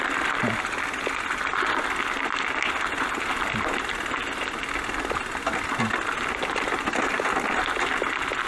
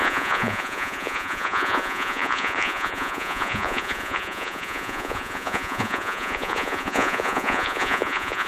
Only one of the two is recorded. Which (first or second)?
first